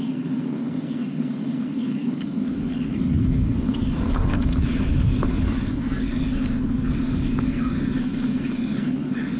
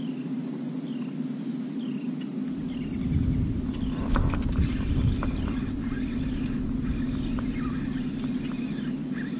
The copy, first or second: first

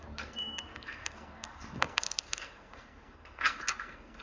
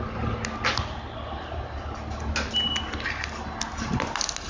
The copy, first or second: first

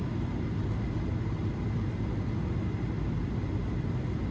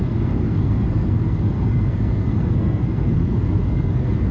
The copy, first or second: second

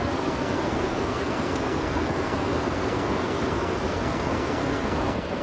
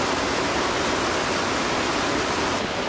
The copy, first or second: first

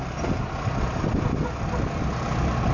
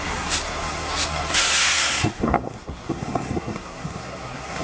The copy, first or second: second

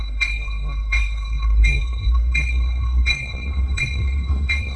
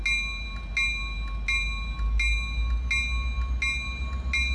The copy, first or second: first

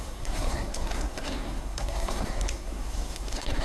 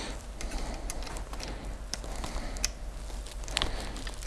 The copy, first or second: first